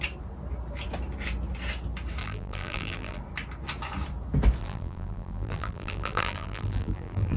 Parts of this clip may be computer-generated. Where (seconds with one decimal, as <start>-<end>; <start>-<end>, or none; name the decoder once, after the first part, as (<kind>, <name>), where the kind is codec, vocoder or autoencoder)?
2.2-3.2 (vocoder, BigVGAN v2); 4.6-7.4